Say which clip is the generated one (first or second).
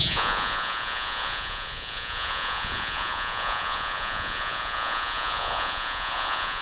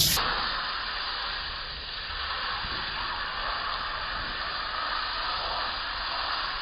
first